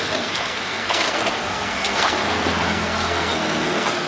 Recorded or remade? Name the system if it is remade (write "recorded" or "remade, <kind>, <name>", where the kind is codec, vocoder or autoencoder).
remade, codec, SNAC